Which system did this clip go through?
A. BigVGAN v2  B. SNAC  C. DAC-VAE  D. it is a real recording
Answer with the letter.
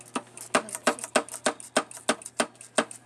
D